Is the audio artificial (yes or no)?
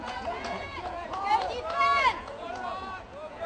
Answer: yes